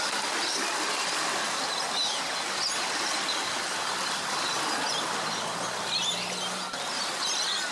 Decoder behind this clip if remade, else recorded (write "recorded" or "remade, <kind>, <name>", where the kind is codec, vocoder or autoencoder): recorded